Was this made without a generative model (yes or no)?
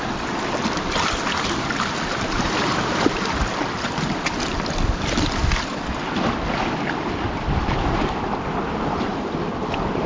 yes